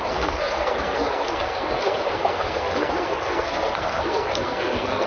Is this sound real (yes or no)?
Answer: no